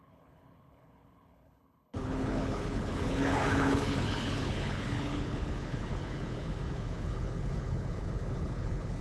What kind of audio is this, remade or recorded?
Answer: remade